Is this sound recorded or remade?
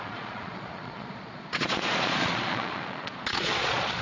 remade